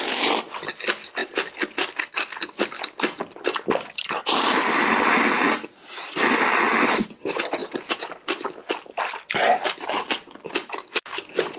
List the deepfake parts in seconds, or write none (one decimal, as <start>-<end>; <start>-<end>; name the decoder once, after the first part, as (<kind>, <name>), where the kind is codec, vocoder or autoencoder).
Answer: 7.6-8.1 (vocoder, Vocos)